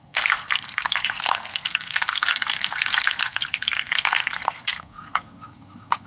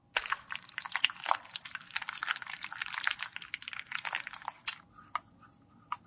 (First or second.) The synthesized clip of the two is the first